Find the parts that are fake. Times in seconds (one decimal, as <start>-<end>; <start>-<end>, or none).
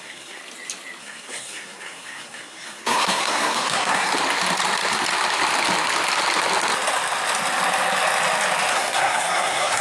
0.0-0.4; 1.0-4.1; 8.7-9.8